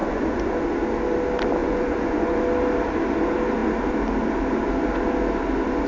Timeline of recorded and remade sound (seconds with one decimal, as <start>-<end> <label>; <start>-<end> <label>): 0.0-0.6 remade; 0.6-1.6 recorded; 1.6-2.4 remade; 2.4-5.9 recorded